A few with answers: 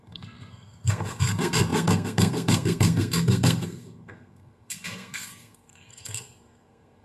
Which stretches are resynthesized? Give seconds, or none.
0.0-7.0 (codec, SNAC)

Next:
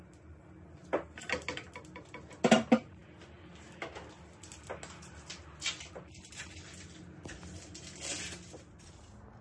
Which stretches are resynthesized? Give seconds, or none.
none

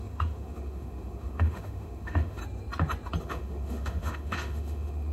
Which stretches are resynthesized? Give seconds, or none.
0.0-2.4 (autoencoder, DAC-VAE); 3.2-5.1

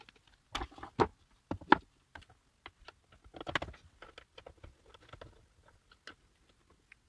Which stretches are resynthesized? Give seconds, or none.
none

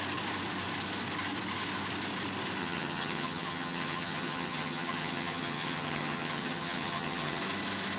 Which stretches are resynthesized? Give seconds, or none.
2.6-7.4 (vocoder, HiFi-GAN)

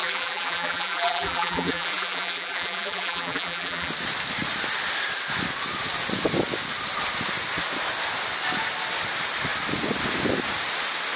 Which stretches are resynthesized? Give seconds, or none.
0.0-3.9 (vocoder, BigVGAN v2)